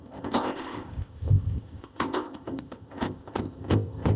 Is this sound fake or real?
fake